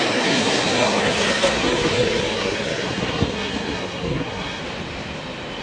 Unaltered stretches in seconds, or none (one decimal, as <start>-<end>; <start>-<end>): 4.6-5.6